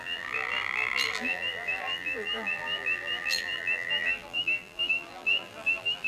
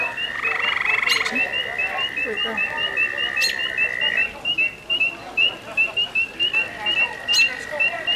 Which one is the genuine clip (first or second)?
second